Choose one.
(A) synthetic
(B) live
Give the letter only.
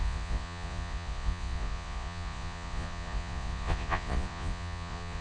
A